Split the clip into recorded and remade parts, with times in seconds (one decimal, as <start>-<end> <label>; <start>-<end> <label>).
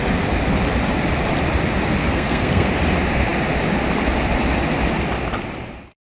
0.0-2.0 recorded; 2.0-2.7 remade; 2.7-6.2 recorded